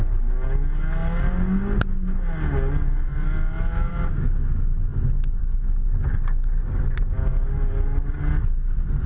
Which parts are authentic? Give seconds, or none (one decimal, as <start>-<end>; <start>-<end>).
0.0-5.4; 6.8-9.1